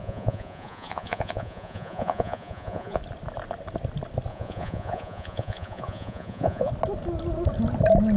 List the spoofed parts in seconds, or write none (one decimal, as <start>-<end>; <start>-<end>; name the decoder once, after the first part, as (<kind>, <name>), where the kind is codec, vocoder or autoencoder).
0.0-3.0 (vocoder, Vocos); 4.3-6.7